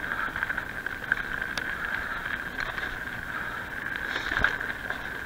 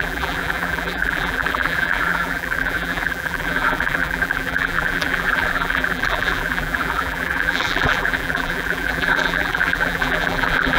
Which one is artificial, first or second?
second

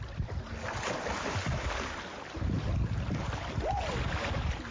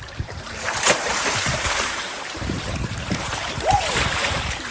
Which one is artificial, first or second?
second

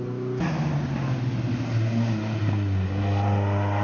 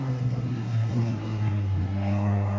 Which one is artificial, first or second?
second